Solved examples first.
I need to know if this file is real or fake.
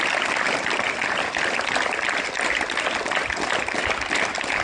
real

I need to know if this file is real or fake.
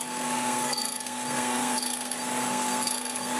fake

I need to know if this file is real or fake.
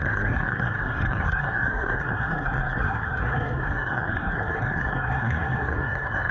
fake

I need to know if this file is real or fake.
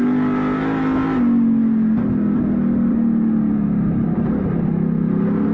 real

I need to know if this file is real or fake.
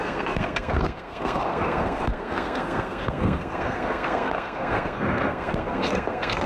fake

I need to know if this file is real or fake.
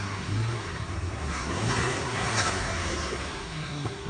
fake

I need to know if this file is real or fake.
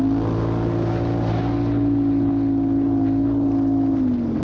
real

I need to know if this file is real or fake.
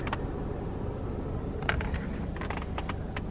real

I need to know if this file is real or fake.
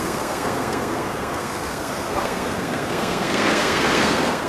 fake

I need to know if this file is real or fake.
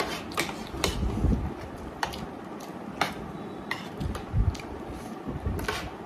real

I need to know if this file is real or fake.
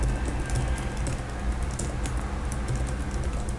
real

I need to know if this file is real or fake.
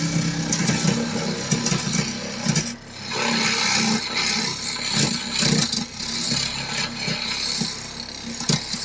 real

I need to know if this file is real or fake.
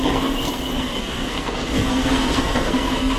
fake